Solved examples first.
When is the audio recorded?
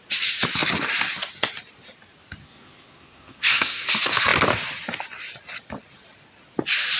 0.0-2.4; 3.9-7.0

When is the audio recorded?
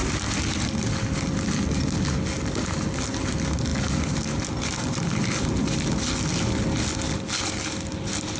0.0-8.4